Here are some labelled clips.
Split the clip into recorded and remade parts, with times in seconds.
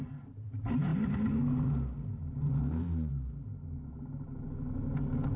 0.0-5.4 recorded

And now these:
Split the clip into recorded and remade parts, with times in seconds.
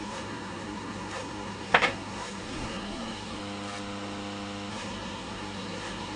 0.0-3.4 remade; 3.4-4.7 recorded; 4.7-6.2 remade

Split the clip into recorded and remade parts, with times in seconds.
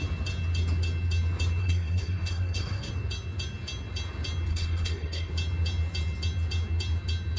0.0-1.6 recorded; 1.6-2.9 remade; 2.9-4.5 recorded; 4.5-5.3 remade; 5.3-7.4 recorded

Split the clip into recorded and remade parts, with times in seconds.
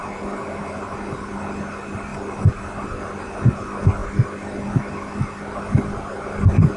0.0-6.8 recorded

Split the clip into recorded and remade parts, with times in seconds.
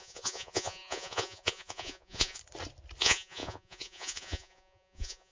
0.0-2.4 remade; 2.4-3.0 recorded; 3.0-5.3 remade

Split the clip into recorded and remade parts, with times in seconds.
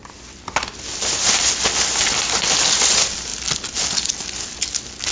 0.0-5.1 recorded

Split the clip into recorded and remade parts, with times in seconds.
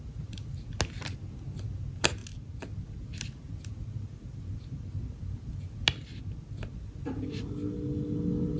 0.0-8.6 recorded